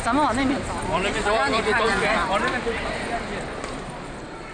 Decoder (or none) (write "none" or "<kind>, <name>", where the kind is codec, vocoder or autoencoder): vocoder, BigVGAN v2